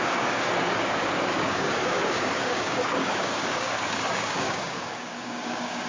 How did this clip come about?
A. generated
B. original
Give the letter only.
A